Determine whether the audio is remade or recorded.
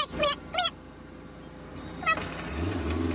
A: recorded